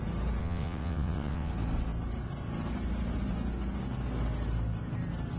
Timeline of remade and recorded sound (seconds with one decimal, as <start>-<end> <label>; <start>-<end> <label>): 0.0-0.4 recorded; 0.4-1.5 remade; 1.5-5.4 recorded